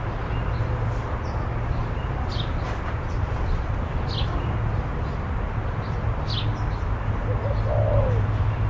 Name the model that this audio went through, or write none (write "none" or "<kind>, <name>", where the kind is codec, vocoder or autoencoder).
none